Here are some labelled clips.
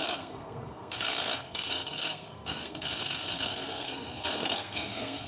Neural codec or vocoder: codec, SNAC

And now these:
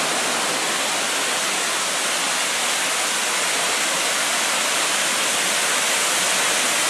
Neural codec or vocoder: none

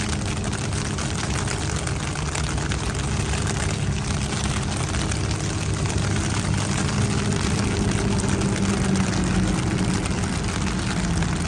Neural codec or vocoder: none